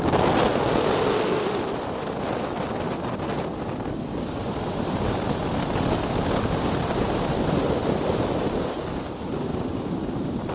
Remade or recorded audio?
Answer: recorded